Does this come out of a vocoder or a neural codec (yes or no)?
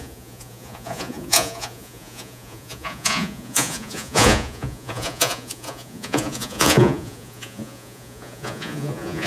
yes